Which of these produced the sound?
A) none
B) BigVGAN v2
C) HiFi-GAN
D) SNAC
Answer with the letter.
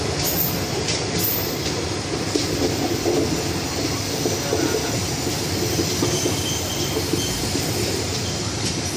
A